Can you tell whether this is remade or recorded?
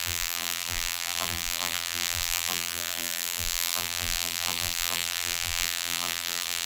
remade